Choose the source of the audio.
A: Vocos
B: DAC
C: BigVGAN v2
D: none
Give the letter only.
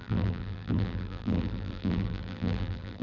C